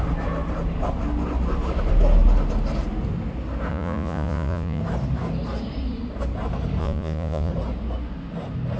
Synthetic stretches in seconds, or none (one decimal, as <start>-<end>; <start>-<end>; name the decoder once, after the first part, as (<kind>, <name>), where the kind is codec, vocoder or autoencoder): 3.7-4.8 (vocoder, Vocos); 6.8-7.5